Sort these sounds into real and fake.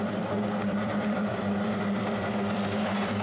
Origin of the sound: fake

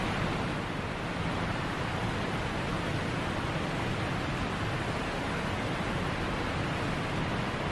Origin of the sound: real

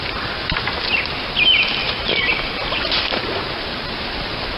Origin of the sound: real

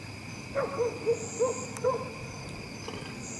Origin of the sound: real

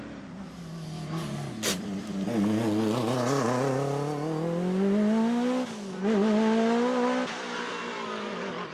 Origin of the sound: real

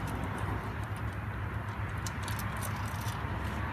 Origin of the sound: real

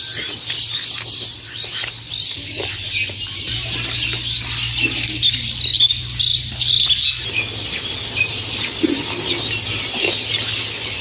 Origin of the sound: real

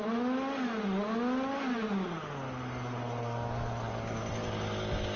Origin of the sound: real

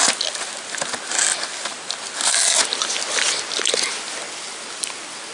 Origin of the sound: real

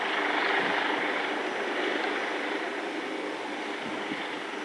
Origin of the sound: real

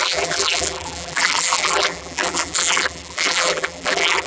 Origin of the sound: fake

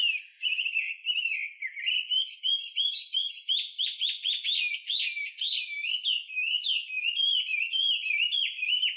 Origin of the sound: fake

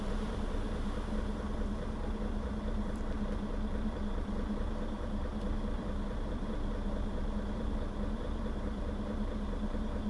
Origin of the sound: fake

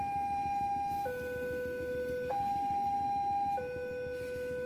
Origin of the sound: real